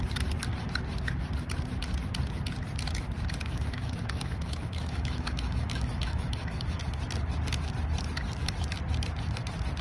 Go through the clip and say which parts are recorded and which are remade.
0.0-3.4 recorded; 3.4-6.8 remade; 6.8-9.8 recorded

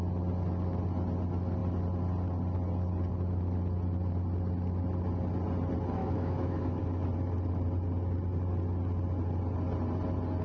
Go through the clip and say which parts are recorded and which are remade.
0.0-6.0 recorded; 6.0-6.8 remade; 6.8-10.4 recorded

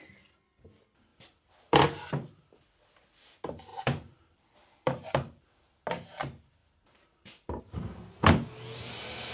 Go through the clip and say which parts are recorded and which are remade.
0.0-1.1 recorded; 1.1-3.3 remade; 3.3-3.7 recorded; 3.7-5.5 remade; 5.5-6.6 recorded; 6.6-7.6 remade; 7.6-9.3 recorded

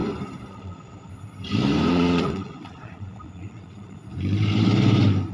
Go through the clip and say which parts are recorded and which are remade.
0.0-0.5 recorded; 0.5-1.1 remade; 1.1-1.9 recorded; 1.9-4.0 remade; 4.0-5.3 recorded

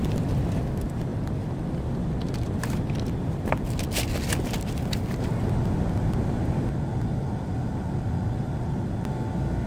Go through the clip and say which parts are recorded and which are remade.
0.0-9.7 recorded

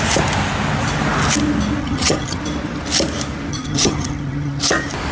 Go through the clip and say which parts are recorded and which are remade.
0.0-1.8 recorded; 1.8-2.4 remade; 2.4-3.5 recorded; 3.5-4.6 remade; 4.6-5.1 recorded

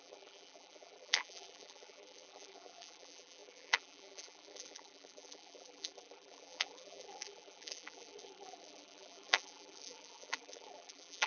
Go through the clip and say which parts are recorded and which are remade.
0.0-11.3 remade

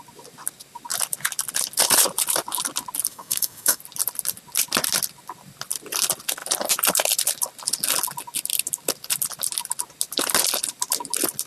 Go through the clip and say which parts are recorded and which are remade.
0.0-3.1 recorded; 3.1-3.8 remade; 3.8-11.5 recorded